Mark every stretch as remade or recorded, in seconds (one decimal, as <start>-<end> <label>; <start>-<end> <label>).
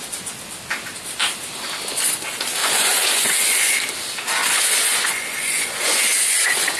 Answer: 0.0-2.6 recorded; 2.6-3.7 remade; 3.7-4.4 recorded; 4.4-6.8 remade